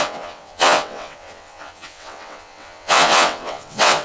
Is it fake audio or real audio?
fake